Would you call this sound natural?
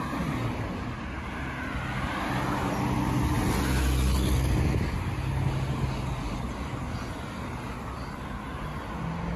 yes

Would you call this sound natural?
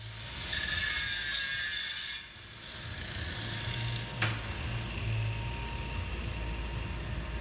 yes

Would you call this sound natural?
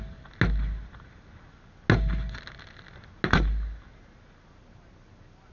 yes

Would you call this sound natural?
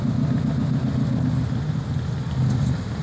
yes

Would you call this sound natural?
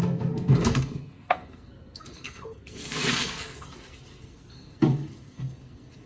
no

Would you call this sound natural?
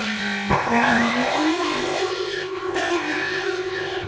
no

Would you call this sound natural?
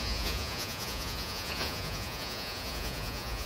no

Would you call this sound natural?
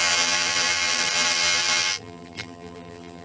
no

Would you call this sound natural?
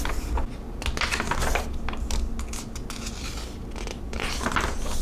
yes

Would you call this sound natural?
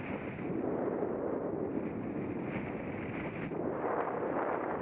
yes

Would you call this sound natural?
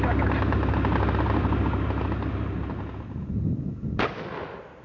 yes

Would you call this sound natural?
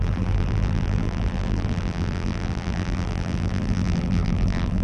no